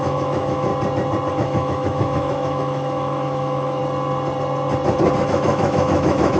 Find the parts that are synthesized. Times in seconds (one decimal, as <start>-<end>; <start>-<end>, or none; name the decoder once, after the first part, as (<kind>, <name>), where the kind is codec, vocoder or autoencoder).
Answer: 0.0-0.7 (autoencoder, DAC-VAE); 1.3-3.8; 5.3-6.4